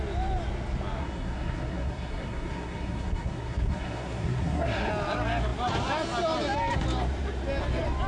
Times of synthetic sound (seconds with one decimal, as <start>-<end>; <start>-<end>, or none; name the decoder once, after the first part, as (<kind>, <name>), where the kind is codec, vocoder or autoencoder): 1.0-4.9 (codec, SNAC)